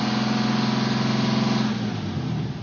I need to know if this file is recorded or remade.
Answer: recorded